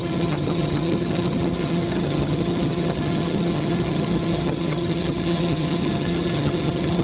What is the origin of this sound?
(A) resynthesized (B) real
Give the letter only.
A